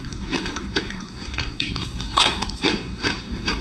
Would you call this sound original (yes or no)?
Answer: no